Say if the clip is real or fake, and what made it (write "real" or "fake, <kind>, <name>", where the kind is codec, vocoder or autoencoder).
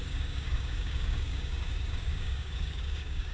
fake, codec, DAC